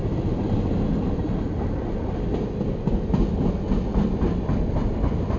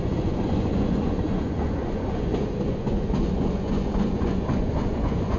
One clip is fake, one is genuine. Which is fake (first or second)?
second